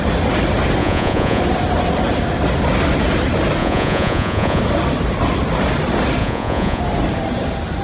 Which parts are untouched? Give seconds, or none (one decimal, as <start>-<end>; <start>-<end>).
0.0-0.8; 1.4-3.6; 4.6-6.2; 6.8-7.8